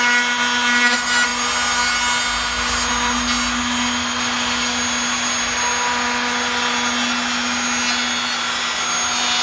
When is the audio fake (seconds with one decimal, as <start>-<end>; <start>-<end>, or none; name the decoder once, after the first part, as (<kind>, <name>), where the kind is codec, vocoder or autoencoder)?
none